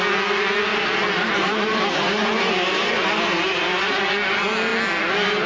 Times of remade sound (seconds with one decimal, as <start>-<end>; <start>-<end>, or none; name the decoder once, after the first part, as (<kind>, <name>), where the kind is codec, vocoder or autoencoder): 0.7-4.0 (vocoder, BigVGAN v2)